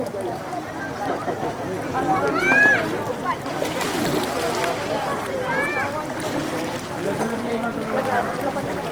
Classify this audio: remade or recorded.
recorded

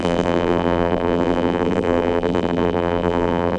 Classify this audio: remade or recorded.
remade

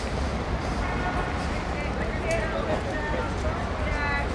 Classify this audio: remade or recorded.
recorded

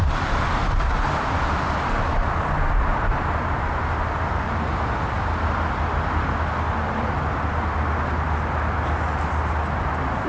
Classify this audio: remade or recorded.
remade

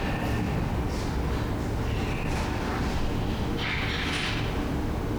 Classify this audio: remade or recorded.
recorded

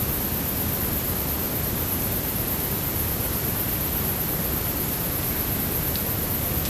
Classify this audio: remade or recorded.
recorded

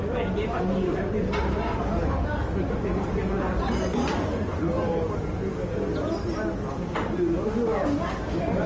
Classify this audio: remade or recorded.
recorded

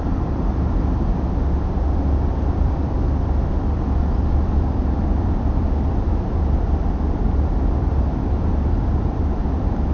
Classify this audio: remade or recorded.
remade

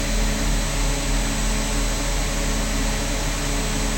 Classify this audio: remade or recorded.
recorded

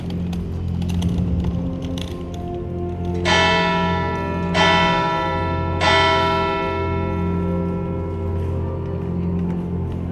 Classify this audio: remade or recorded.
recorded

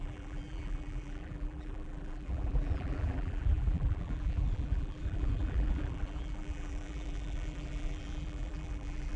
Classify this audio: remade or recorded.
remade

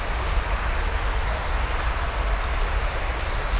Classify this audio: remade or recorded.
recorded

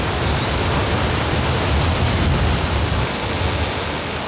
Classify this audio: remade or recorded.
recorded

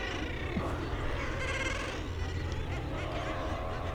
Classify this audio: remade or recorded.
recorded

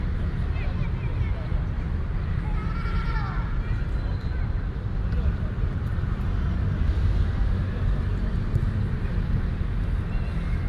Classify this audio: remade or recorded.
recorded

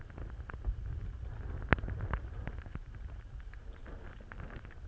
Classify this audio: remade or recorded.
recorded